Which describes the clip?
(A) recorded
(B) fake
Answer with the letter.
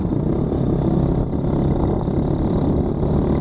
A